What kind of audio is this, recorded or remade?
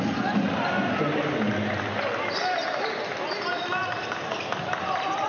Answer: recorded